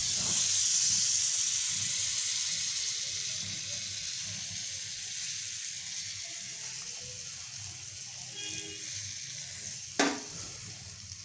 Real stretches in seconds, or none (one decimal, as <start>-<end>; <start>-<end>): 0.0-11.2